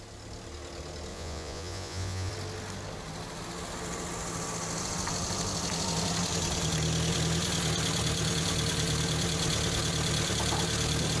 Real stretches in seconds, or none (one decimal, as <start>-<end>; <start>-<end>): 0.0-1.1; 2.3-11.2